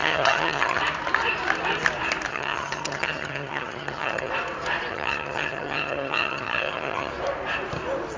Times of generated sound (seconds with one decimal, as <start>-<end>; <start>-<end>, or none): 0.0-0.8; 2.3-4.3; 4.9-7.1